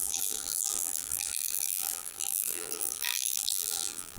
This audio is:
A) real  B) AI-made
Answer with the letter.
B